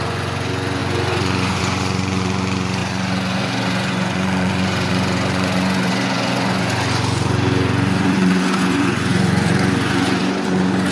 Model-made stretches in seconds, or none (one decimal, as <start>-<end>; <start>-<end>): 0.0-10.9